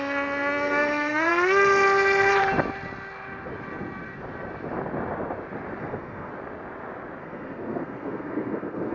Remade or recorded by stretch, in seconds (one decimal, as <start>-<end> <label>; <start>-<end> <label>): 0.0-1.3 remade; 1.3-5.8 recorded; 5.8-6.3 remade; 6.3-7.2 recorded; 7.2-8.9 remade